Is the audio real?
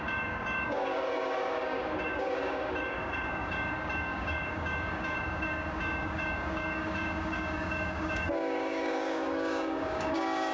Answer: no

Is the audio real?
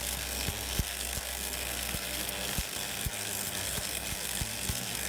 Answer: no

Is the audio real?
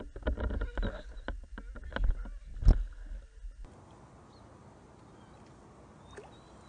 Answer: yes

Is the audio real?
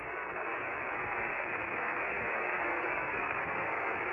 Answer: no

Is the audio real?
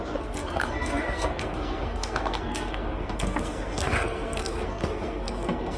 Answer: no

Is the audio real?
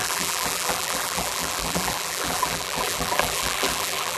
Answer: no